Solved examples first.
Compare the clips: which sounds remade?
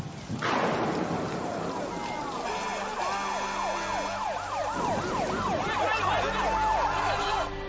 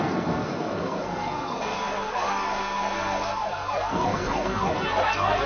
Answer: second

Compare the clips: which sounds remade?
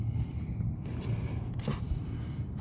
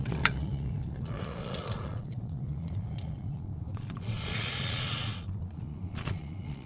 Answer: second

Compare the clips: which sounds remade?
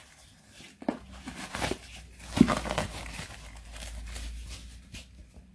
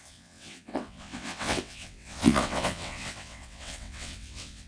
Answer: second